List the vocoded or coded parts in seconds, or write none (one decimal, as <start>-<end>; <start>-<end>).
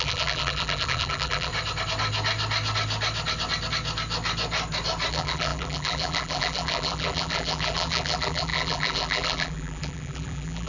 0.0-1.5; 5.1-10.7